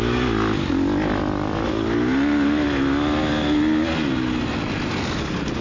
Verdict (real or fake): real